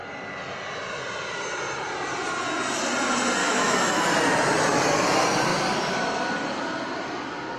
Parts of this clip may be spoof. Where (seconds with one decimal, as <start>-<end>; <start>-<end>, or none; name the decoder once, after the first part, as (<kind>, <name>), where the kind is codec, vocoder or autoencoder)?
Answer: 3.4-4.0 (autoencoder, DAC-VAE)